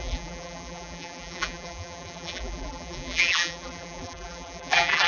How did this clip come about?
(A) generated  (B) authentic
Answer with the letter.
A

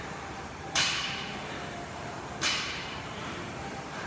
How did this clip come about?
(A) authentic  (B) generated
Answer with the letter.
B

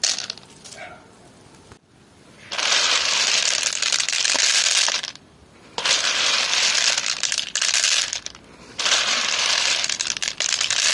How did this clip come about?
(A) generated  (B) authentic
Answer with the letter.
A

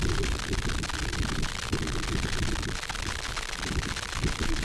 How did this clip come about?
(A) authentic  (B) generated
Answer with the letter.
A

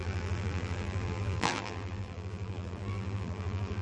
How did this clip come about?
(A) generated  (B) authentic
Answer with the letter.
A